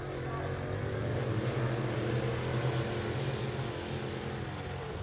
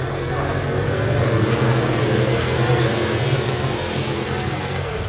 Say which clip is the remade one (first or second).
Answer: second